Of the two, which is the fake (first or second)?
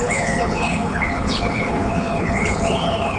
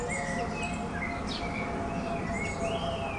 first